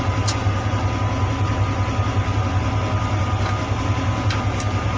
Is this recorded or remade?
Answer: recorded